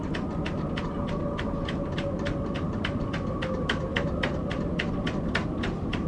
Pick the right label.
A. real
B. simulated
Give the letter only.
A